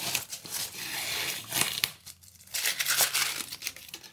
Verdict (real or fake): fake